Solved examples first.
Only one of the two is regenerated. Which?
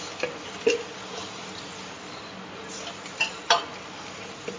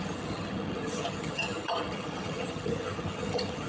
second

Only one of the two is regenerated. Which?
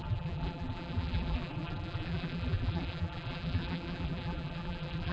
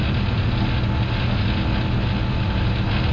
first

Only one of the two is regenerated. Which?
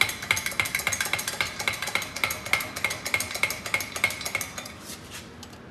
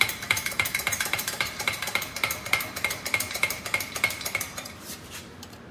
second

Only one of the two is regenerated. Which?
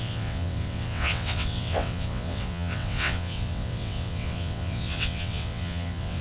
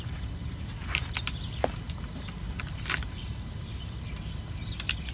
first